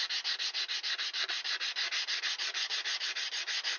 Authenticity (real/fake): real